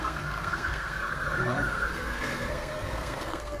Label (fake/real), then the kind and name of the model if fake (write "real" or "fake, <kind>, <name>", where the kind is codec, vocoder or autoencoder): fake, codec, SNAC